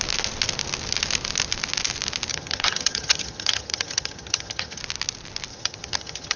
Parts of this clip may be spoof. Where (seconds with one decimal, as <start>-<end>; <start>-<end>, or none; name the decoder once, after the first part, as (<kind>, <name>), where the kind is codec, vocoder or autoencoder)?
2.3-4.8 (vocoder, HiFi-GAN); 5.5-6.4

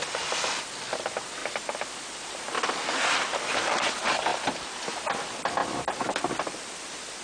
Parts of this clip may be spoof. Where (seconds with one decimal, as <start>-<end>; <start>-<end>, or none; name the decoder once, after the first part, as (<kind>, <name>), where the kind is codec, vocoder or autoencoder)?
1.4-3.0 (vocoder, BigVGAN v2); 4.3-4.9; 5.6-6.3

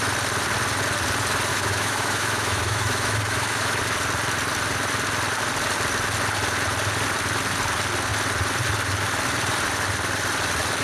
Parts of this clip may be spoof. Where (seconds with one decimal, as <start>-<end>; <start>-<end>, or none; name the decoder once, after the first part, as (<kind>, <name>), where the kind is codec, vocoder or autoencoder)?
1.5-3.8 (autoencoder, DAC-VAE)

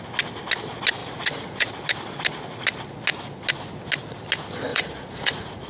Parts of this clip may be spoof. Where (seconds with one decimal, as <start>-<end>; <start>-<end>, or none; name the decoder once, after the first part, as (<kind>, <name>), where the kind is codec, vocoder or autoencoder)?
1.0-1.7 (vocoder, Vocos); 4.7-5.7

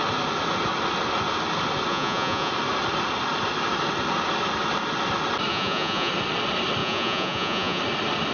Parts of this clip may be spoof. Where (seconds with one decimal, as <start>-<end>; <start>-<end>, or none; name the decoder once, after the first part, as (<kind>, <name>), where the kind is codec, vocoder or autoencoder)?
1.9-2.5 (vocoder, Vocos); 5.5-6.1; 6.8-7.8

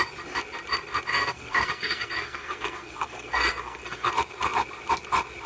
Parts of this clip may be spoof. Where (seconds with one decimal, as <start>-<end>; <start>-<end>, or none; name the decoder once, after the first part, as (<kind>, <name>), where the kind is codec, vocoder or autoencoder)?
1.1-4.1 (codec, SNAC)